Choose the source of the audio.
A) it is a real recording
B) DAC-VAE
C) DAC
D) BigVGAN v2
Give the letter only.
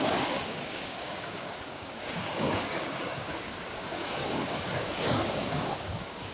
C